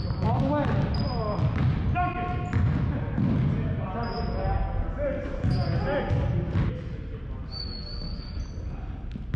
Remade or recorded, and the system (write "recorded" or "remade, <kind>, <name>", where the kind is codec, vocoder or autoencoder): recorded